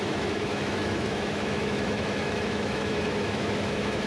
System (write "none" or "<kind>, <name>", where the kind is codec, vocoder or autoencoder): autoencoder, DAC-VAE